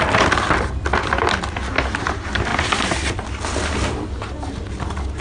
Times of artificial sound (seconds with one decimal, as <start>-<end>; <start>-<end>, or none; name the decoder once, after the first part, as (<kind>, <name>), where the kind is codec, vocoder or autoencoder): none